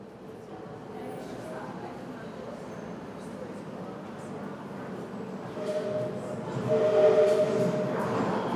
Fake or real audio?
real